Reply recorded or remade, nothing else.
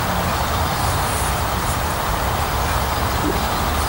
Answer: recorded